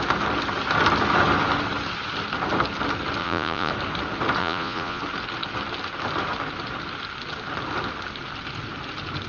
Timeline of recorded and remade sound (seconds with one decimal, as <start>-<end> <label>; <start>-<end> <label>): 0.0-3.2 recorded; 3.2-3.7 remade; 3.7-4.4 recorded; 4.4-5.0 remade; 5.0-9.3 recorded